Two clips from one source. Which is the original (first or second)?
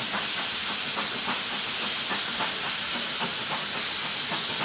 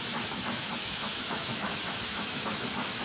first